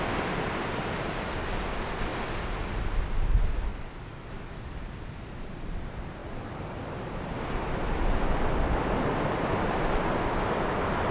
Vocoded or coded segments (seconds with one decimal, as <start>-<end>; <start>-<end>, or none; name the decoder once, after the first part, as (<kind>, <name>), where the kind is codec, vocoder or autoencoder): none